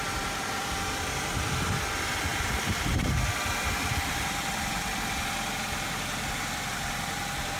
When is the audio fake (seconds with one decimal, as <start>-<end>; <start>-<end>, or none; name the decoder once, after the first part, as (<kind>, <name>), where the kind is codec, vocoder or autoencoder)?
0.0-7.6 (vocoder, BigVGAN v2)